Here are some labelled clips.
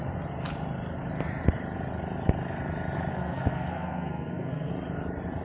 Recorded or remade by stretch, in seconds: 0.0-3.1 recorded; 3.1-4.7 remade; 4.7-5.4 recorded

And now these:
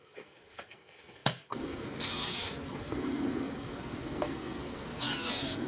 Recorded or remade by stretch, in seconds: 0.0-5.7 remade